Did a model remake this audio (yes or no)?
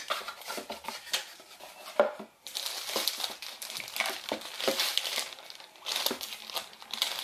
no